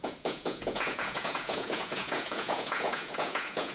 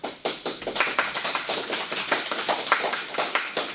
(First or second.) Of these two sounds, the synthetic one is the first